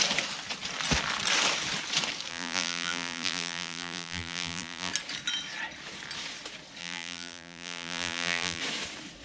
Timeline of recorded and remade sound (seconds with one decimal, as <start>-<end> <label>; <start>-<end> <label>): 0.0-2.3 recorded; 2.3-4.9 remade; 4.9-6.8 recorded; 6.8-8.6 remade; 8.6-9.2 recorded